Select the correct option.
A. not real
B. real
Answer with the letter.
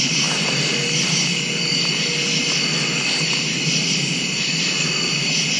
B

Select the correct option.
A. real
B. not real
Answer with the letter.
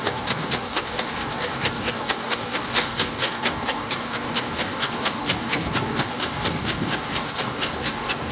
B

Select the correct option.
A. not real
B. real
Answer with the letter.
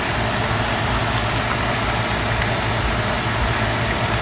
B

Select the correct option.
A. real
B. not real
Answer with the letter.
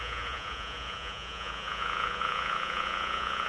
B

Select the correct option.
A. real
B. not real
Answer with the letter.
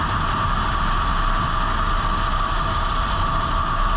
A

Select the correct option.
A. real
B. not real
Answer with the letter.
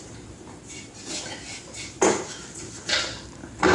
A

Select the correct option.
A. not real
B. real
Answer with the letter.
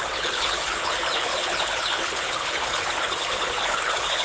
A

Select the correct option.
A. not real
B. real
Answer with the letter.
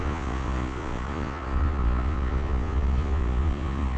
A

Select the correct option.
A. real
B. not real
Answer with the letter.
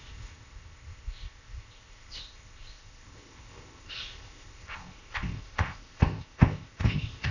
B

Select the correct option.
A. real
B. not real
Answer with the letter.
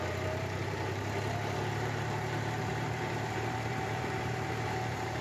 B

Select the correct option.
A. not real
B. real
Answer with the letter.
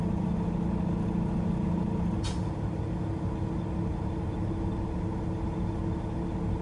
B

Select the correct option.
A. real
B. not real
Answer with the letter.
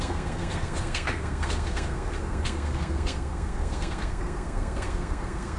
B